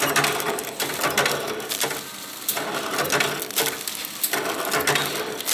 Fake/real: real